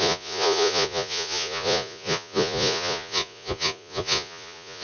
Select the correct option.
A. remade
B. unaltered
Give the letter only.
A